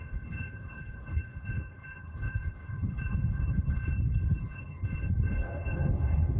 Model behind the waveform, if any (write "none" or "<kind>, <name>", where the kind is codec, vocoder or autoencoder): codec, HILCodec